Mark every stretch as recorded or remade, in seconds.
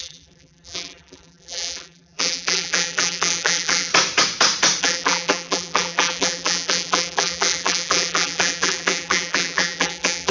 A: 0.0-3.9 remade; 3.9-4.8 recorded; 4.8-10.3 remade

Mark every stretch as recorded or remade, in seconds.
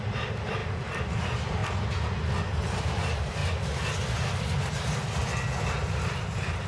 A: 0.0-1.6 remade; 1.6-2.8 recorded; 2.8-3.4 remade; 3.4-6.7 recorded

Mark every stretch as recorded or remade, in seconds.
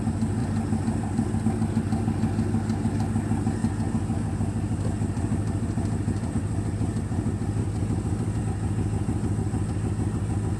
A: 0.0-0.4 recorded; 0.4-1.4 remade; 1.4-7.6 recorded; 7.6-8.4 remade; 8.4-10.6 recorded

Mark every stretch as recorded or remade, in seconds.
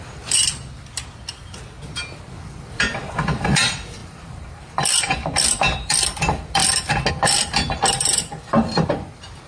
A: 0.0-0.4 remade; 0.4-2.3 recorded; 2.3-6.6 remade; 6.6-7.1 recorded; 7.1-9.5 remade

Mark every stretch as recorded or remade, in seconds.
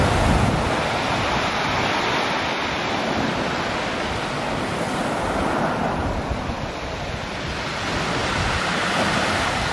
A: 0.0-5.8 recorded; 5.8-6.4 remade; 6.4-8.2 recorded; 8.2-9.7 remade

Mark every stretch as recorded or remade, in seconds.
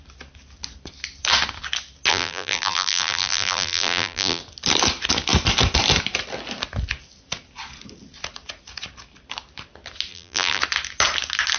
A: 0.0-2.1 recorded; 2.1-4.4 remade; 4.4-10.1 recorded; 10.1-10.6 remade; 10.6-11.6 recorded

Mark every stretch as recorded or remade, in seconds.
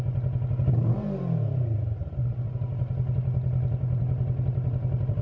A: 0.0-5.2 recorded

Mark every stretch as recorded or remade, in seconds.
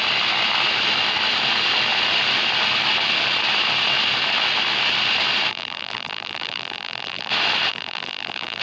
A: 0.0-5.5 recorded; 5.5-7.3 remade; 7.3-7.7 recorded; 7.7-8.6 remade